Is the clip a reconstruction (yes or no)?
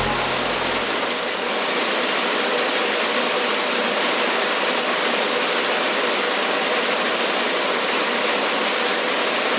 no